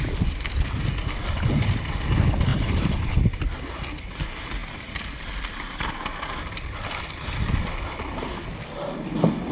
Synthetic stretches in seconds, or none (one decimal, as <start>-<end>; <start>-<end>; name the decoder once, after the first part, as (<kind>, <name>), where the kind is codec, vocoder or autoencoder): 2.5-3.1 (vocoder, BigVGAN v2); 4.6-7.0